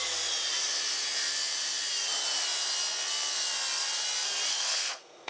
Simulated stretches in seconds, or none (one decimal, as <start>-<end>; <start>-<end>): 4.5-5.3